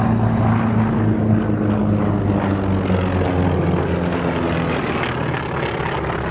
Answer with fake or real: real